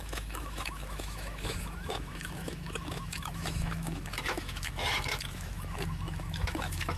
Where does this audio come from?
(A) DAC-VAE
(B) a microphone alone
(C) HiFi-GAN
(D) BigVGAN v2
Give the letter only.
A